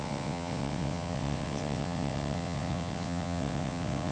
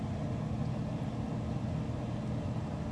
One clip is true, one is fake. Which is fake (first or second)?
first